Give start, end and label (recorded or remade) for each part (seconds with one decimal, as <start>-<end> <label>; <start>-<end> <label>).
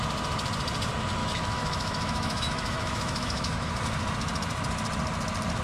0.0-1.2 recorded; 1.2-3.7 remade; 3.7-5.6 recorded